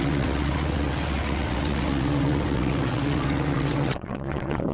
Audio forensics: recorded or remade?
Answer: remade